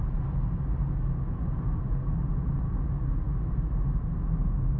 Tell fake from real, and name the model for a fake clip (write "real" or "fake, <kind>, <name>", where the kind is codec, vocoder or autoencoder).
real